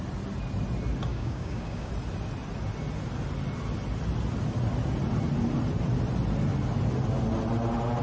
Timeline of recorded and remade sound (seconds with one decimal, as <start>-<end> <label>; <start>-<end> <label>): 0.0-1.1 recorded; 1.1-1.9 remade; 1.9-8.0 recorded